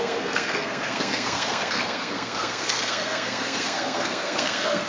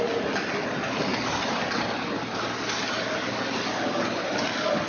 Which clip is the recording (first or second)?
second